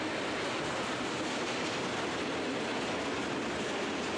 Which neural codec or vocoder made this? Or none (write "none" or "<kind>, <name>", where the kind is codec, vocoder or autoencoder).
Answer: none